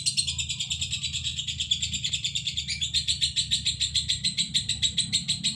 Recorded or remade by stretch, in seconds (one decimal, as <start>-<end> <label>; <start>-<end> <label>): 0.0-5.6 recorded